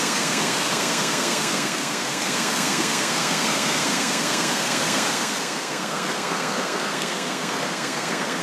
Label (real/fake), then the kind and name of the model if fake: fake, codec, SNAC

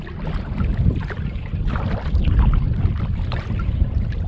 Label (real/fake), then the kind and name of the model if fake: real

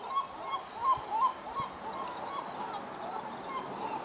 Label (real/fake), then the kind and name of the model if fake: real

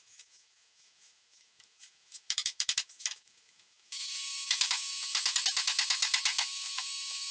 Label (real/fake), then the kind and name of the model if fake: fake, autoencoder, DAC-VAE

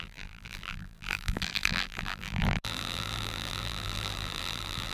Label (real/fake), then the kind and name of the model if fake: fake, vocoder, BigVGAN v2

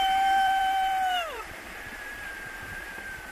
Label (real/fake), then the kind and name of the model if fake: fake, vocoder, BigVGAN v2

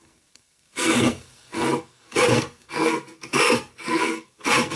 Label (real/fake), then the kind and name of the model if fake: fake, codec, SNAC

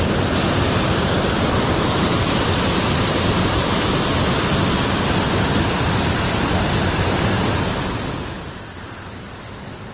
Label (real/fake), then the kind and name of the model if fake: fake, vocoder, BigVGAN v2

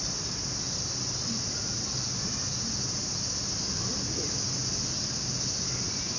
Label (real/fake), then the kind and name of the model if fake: real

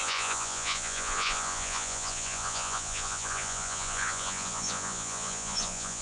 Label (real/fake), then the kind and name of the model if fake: fake, vocoder, Vocos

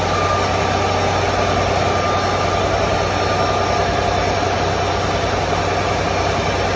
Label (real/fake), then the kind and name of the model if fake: real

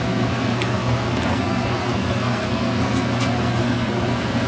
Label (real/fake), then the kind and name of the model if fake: fake, codec, SNAC